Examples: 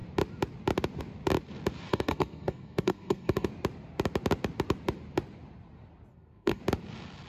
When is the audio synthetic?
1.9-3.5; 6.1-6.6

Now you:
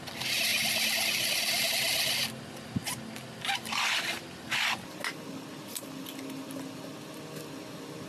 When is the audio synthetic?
none

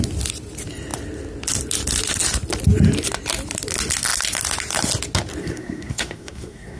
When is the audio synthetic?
5.4-6.8

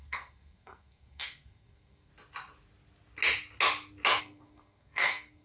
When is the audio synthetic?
0.0-2.1; 4.2-5.4

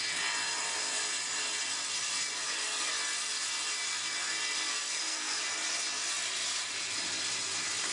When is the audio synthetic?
2.4-2.9; 4.7-5.4

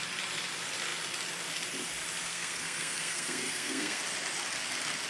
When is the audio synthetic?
2.3-4.0

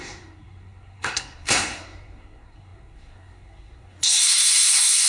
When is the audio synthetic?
0.0-5.1

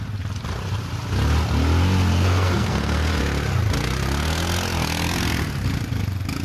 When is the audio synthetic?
2.1-3.2